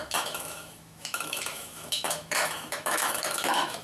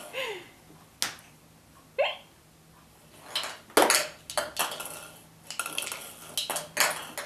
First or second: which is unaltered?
second